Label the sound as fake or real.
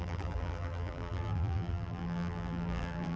fake